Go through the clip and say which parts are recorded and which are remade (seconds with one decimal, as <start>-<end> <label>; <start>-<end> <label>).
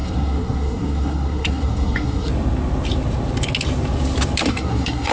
0.0-2.3 remade; 2.3-4.5 recorded; 4.5-5.1 remade